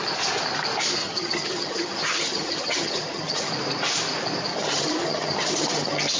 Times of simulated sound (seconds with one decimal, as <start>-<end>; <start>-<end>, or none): 1.0-3.5; 4.5-6.2